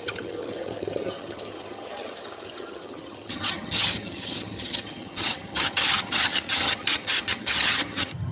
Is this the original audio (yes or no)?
no